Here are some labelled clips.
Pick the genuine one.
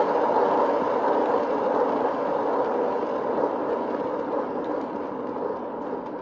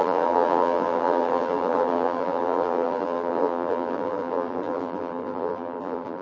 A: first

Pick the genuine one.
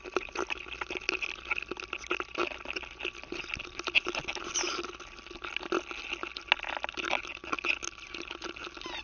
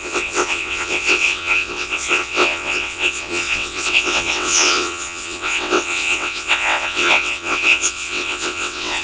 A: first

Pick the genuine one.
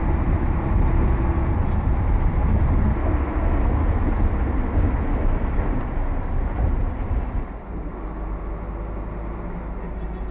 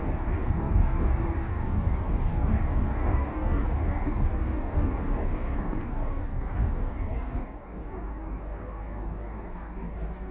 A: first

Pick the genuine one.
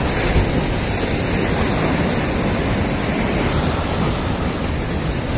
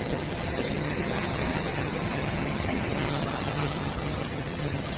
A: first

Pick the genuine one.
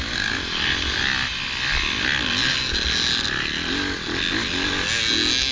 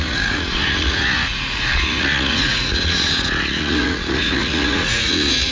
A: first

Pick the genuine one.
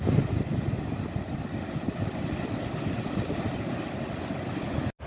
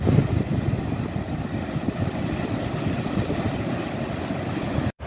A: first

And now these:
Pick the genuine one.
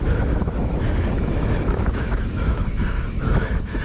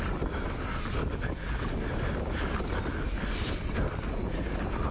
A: second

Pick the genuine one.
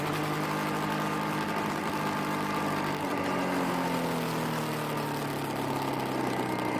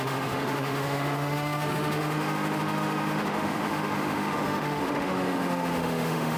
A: first